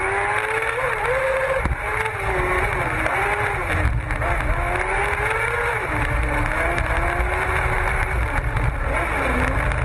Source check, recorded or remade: recorded